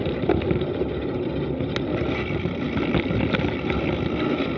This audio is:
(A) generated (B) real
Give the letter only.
B